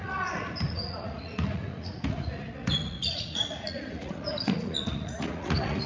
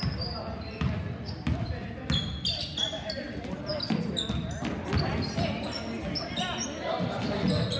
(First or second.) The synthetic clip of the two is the first